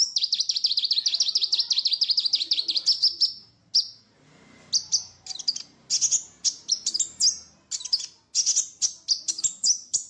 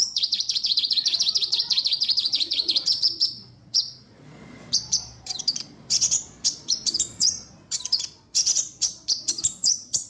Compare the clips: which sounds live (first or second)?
first